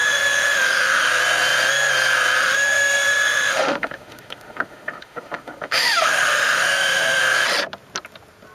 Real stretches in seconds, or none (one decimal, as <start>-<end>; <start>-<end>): 1.1-2.4; 7.2-8.5